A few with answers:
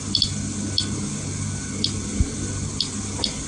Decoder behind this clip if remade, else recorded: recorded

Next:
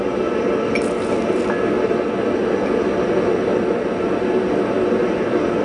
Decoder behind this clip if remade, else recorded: recorded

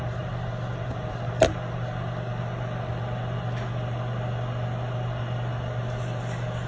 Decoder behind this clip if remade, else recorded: recorded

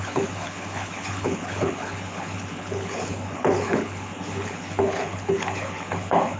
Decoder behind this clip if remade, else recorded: remade, codec, HILCodec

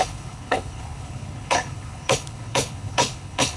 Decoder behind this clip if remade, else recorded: remade, codec, HILCodec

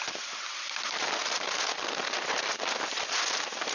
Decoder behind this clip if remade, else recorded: recorded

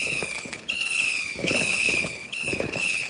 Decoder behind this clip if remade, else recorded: remade, codec, HILCodec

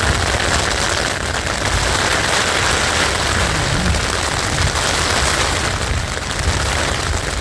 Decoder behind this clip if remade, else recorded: recorded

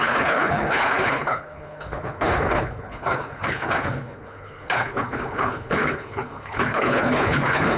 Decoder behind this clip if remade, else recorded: remade, codec, HILCodec